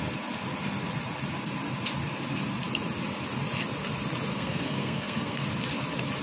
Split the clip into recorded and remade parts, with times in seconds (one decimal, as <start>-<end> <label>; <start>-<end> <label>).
0.0-4.3 recorded; 4.3-5.4 remade; 5.4-6.2 recorded